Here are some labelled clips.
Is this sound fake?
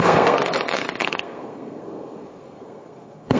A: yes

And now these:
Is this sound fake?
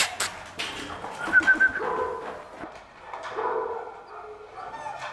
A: no